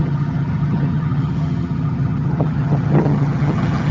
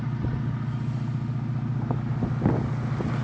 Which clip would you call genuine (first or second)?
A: second